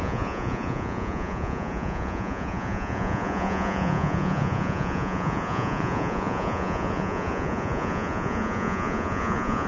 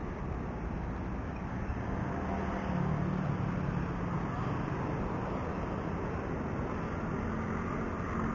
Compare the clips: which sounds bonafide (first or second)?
second